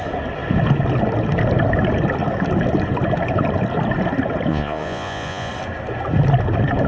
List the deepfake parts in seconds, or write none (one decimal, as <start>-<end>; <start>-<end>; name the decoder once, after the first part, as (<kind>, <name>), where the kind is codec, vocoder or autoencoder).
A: 4.5-5.5 (vocoder, Vocos)